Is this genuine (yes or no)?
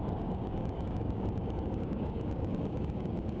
no